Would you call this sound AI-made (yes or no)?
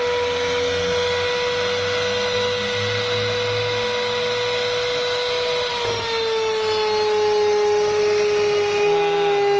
no